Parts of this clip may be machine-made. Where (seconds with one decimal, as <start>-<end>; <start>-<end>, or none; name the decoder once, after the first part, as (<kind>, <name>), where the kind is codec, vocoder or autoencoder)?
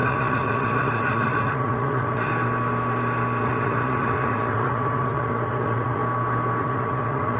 0.0-2.3 (vocoder, Vocos); 3.4-6.0; 6.6-7.4